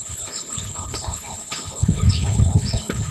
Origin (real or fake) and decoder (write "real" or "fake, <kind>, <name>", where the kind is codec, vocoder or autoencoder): fake, codec, HILCodec